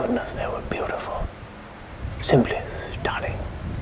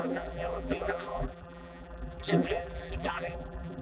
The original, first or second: first